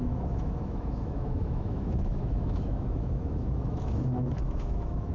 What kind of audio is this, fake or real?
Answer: fake